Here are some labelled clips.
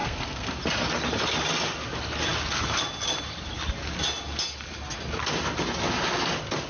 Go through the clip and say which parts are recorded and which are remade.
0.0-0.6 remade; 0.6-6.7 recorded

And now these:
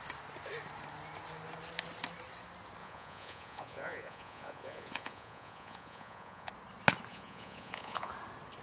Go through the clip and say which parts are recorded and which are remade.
0.0-2.8 recorded; 2.8-6.5 remade; 6.5-7.1 recorded; 7.1-8.1 remade; 8.1-8.6 recorded